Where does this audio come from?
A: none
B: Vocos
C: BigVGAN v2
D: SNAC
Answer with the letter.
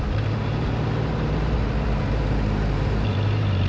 C